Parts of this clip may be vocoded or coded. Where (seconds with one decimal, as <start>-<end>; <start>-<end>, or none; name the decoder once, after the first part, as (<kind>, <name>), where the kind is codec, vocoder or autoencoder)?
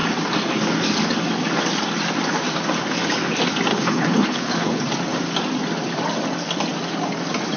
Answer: 3.7-4.8 (codec, HILCodec)